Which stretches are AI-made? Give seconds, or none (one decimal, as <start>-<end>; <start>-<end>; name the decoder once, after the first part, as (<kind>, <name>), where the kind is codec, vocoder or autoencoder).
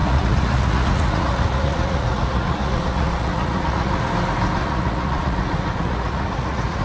0.0-4.1 (vocoder, Vocos); 4.6-6.8